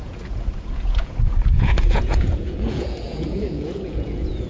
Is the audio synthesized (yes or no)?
yes